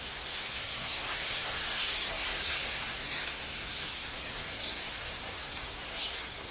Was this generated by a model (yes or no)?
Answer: yes